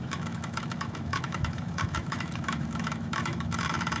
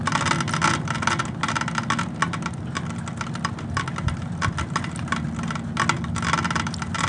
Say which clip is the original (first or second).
second